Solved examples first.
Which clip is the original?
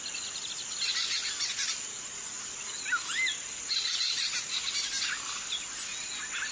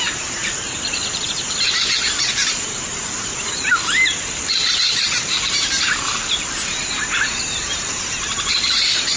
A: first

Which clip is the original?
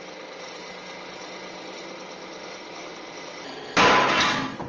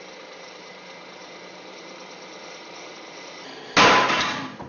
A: first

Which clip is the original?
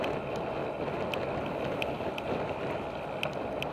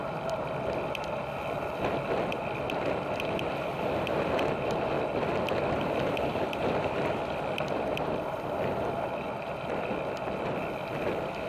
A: first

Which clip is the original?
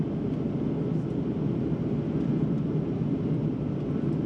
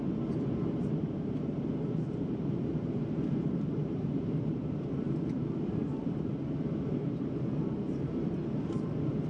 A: first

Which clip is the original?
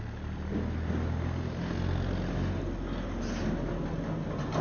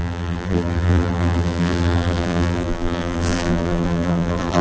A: first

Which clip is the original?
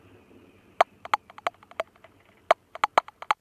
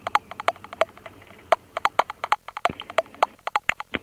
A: first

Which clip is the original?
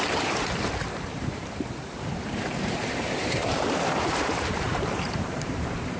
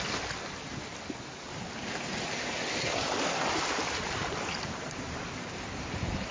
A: second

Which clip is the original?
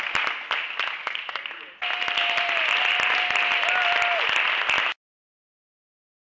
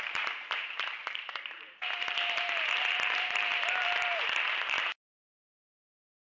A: first